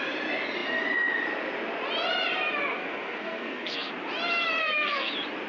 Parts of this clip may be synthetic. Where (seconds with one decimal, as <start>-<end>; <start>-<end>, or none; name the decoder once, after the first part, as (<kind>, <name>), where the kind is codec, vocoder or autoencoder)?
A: 2.8-3.9 (codec, SNAC); 4.6-5.1